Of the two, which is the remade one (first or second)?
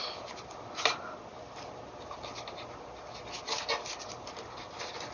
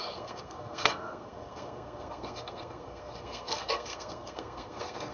second